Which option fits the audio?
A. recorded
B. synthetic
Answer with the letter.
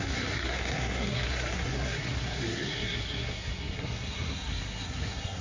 B